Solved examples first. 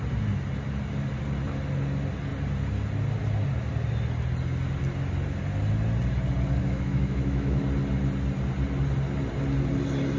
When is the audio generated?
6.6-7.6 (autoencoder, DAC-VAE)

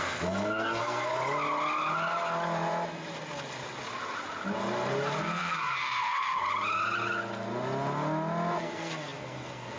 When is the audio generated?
0.0-1.1 (codec, SNAC); 5.2-6.4; 8.6-9.8

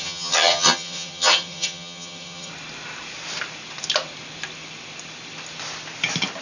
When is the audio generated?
0.0-2.5 (vocoder, HiFi-GAN)

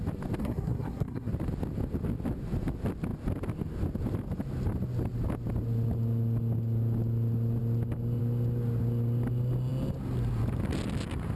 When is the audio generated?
0.4-1.3 (codec, SNAC)

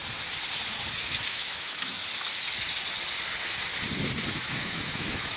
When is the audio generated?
0.9-2.0 (autoencoder, DAC-VAE); 4.3-5.4